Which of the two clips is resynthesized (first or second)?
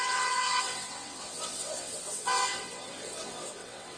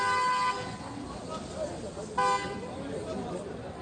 first